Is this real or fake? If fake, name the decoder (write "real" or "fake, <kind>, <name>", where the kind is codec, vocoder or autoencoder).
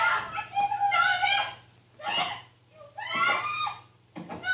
real